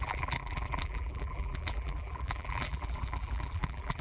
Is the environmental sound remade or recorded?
remade